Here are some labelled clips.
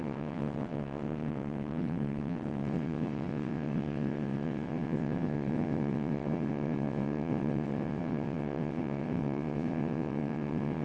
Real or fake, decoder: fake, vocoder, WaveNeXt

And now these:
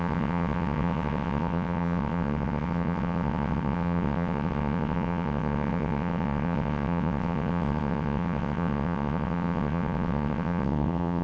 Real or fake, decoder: fake, vocoder, WaveNeXt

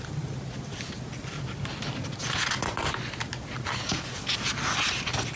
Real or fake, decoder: real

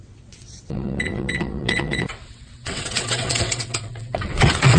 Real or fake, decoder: fake, vocoder, WaveNeXt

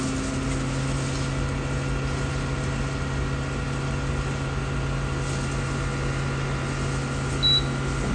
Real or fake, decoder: real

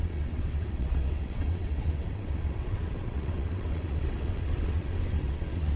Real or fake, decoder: fake, vocoder, WaveNeXt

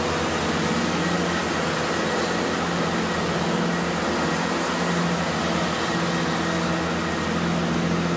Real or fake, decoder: real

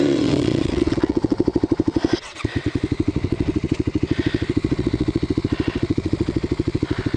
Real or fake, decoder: fake, vocoder, WaveNeXt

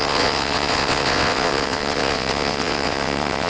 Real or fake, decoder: fake, vocoder, WaveNeXt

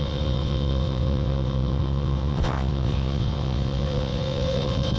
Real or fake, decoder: fake, vocoder, WaveNeXt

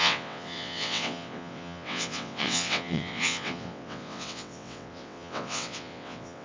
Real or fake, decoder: fake, vocoder, WaveNeXt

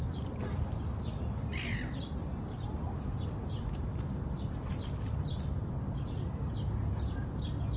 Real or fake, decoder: real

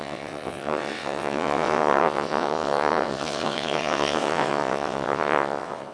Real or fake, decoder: fake, vocoder, WaveNeXt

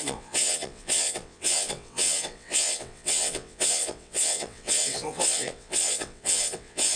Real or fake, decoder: fake, vocoder, WaveNeXt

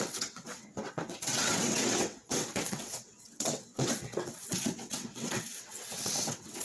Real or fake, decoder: fake, vocoder, WaveNeXt